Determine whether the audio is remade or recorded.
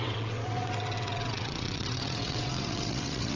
remade